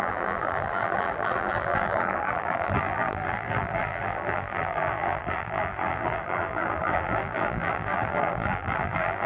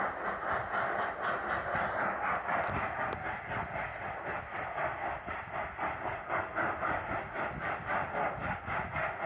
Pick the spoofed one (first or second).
first